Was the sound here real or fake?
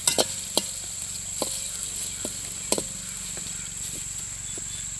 real